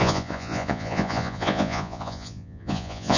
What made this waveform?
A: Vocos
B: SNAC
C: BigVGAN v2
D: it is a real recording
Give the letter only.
A